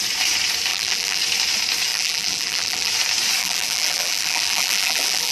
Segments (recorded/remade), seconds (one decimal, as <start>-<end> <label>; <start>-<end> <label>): 0.0-0.7 recorded; 0.7-1.2 remade; 1.2-1.9 recorded; 1.9-2.9 remade; 2.9-3.4 recorded; 3.4-5.3 remade